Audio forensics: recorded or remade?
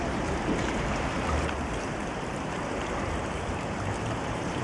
remade